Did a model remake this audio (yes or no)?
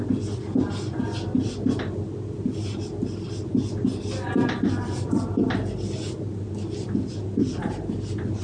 no